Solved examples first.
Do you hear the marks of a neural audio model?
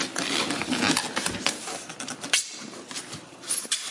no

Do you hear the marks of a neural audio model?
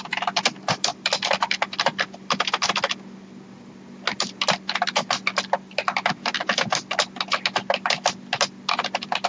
no